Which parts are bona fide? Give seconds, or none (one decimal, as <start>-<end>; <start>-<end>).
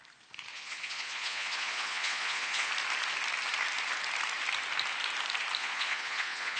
0.0-0.5; 2.7-5.6